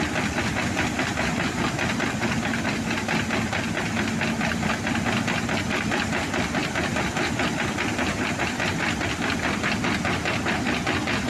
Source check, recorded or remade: recorded